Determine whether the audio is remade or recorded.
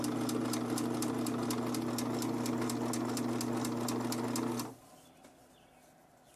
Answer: recorded